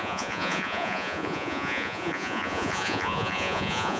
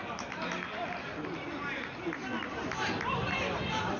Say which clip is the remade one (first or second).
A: first